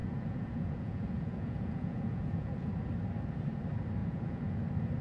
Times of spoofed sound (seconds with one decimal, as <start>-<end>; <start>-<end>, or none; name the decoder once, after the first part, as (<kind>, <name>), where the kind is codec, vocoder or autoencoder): 0.0-2.7 (vocoder, Vocos); 4.0-4.6